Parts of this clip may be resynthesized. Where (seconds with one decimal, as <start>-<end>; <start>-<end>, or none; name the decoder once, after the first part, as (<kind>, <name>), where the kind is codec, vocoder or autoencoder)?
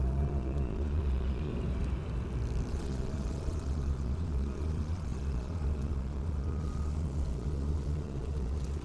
0.0-1.5 (vocoder, Vocos); 2.7-8.8